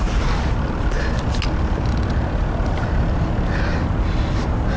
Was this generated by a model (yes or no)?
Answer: no